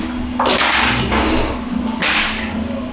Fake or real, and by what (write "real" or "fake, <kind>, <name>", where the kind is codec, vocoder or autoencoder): real